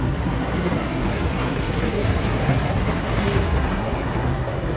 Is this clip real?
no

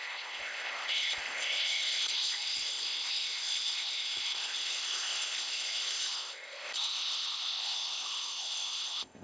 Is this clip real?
no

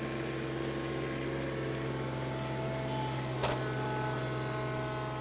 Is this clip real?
yes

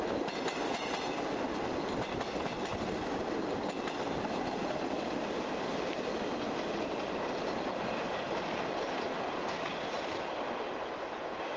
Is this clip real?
yes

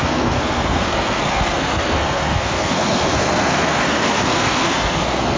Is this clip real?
no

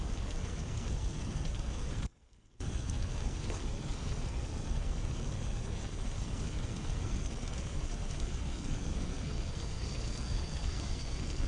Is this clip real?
no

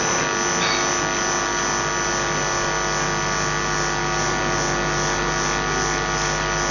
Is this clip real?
yes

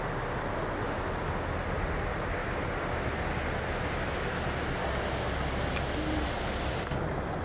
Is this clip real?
yes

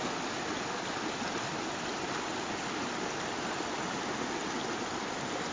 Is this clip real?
yes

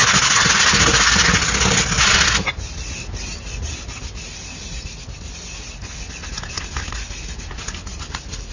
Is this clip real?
yes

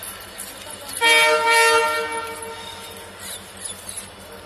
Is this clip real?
yes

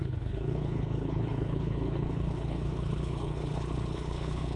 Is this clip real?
no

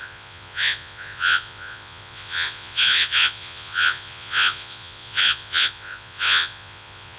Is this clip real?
no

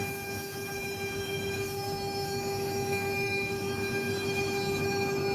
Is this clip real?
no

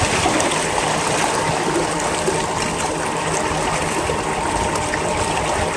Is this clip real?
yes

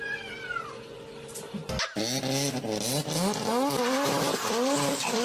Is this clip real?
yes